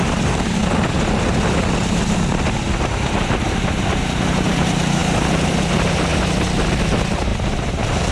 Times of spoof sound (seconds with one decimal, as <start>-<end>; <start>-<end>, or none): 0.0-0.6; 4.3-8.1